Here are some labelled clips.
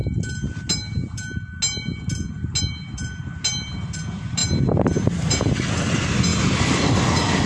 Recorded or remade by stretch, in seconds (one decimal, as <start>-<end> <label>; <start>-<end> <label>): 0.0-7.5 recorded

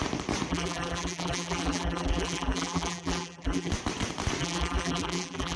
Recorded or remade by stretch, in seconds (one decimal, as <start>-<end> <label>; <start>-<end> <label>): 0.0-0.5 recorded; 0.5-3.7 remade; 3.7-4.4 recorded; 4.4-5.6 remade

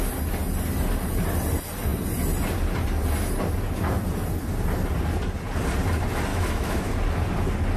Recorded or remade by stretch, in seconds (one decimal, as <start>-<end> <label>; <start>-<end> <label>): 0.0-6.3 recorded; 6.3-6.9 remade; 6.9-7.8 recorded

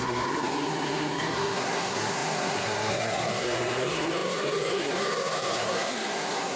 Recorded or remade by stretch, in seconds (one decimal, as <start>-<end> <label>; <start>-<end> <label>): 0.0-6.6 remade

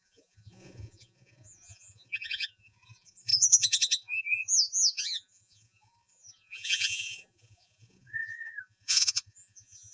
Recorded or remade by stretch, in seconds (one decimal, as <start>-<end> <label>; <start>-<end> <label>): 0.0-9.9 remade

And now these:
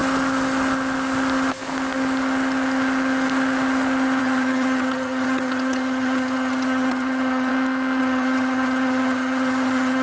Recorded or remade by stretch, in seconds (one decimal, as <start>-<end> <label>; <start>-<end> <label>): 0.0-4.2 recorded; 4.2-7.5 remade; 7.5-8.0 recorded; 8.0-10.0 remade